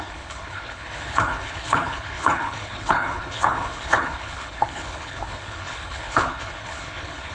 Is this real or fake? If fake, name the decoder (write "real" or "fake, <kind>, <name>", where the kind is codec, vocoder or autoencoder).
fake, codec, HILCodec